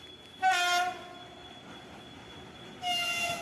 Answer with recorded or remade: recorded